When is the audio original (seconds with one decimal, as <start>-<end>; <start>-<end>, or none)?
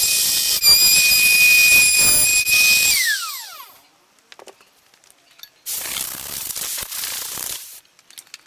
0.0-8.5